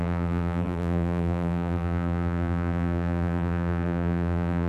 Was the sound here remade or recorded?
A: remade